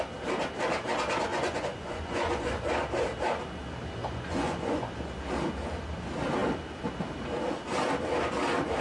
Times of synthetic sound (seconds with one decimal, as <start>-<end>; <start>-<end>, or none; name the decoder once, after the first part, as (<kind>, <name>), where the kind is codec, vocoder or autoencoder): 1.3-2.6 (vocoder, Vocos); 4.0-4.9